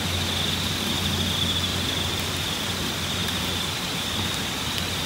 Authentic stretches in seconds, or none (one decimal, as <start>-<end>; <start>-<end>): 0.0-1.7; 2.3-3.2; 4.2-5.1